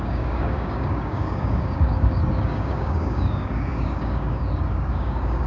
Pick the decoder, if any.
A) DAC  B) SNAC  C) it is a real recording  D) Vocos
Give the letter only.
A